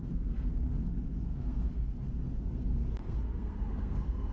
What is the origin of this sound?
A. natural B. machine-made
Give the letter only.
B